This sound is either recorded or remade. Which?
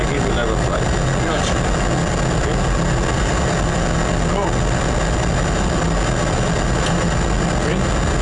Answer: recorded